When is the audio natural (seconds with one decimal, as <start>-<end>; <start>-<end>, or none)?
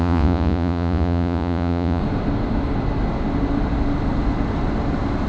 2.0-5.3